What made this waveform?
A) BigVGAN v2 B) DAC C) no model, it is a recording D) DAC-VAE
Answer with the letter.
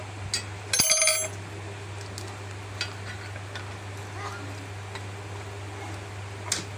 C